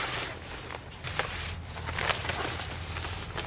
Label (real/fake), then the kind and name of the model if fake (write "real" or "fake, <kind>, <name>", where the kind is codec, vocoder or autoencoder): real